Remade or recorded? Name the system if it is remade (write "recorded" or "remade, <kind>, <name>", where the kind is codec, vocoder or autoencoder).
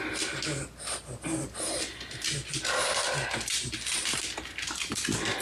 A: recorded